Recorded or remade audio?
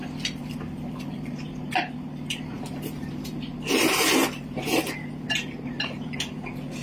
recorded